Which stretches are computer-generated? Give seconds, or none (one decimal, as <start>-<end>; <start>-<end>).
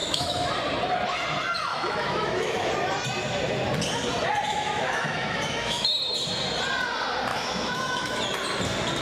0.0-0.5; 1.7-2.7; 4.5-5.9; 7.3-8.2